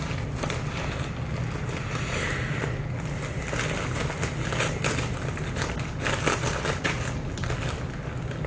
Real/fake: real